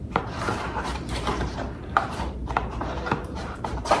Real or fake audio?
fake